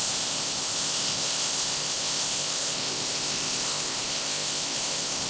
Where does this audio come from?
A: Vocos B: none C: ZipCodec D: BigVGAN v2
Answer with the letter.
C